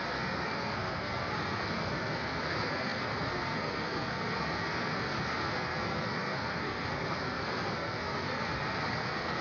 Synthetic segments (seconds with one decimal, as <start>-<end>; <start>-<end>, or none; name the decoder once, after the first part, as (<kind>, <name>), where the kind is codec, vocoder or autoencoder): 0.0-9.4 (codec, SNAC)